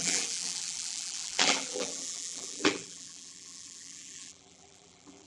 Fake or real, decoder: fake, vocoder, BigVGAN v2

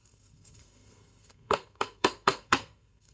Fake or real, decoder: fake, codec, SNAC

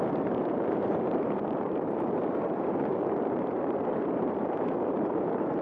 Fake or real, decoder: fake, vocoder, BigVGAN v2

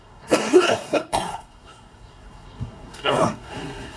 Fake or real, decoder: fake, codec, SNAC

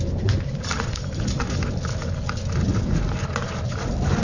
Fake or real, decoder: real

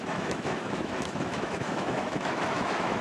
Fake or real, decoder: fake, autoencoder, DAC-VAE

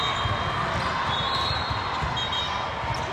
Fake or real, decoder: real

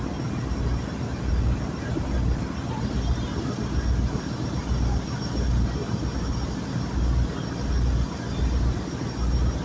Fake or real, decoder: real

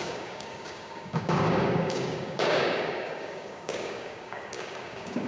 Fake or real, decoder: fake, codec, DAC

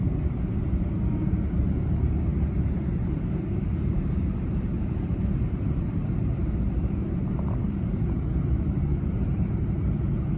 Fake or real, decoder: fake, vocoder, BigVGAN v2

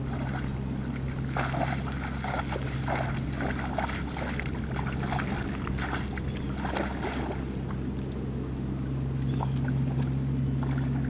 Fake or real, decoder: real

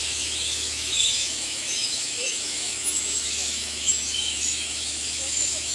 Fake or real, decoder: fake, autoencoder, DAC-VAE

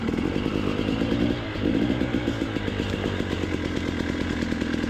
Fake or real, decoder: real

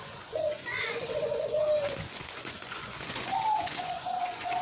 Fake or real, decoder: fake, vocoder, Vocos